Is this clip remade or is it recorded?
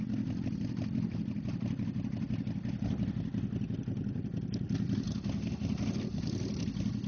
recorded